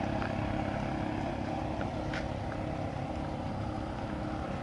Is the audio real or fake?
real